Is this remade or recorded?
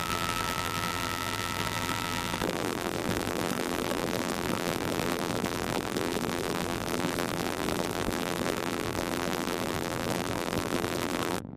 remade